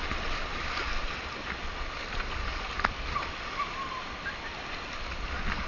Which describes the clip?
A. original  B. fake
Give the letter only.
A